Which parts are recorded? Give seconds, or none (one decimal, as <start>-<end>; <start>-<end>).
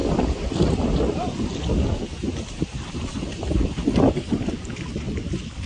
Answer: 0.0-5.7